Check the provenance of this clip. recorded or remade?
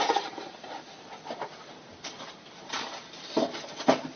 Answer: remade